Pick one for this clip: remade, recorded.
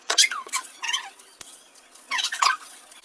remade